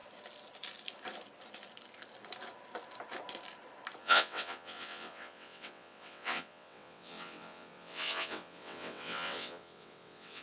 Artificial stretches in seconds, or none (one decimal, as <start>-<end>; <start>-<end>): 4.0-10.4